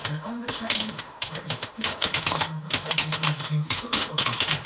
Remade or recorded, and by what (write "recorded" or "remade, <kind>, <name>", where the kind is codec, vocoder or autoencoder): remade, autoencoder, DAC-VAE